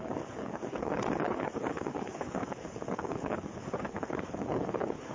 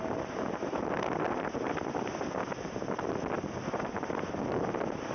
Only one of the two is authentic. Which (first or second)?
second